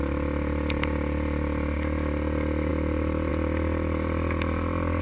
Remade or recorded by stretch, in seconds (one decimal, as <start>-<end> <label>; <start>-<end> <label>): 0.0-2.7 recorded; 2.7-3.3 remade; 3.3-5.0 recorded